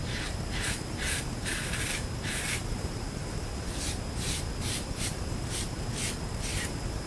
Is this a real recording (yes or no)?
no